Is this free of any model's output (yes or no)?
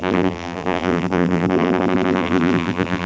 no